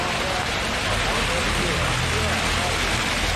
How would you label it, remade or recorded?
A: recorded